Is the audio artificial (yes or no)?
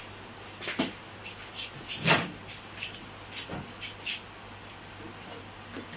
no